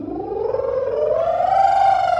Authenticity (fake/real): real